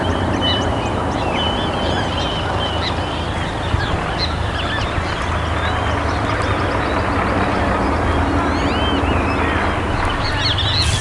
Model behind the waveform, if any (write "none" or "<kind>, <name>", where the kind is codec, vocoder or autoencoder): none